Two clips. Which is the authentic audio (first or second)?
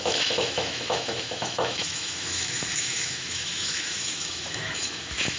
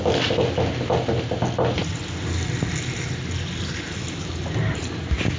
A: second